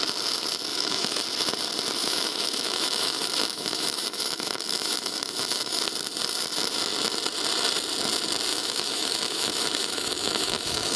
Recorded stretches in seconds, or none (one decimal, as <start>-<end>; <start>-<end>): 0.0-0.7; 1.2-2.0; 5.8-8.5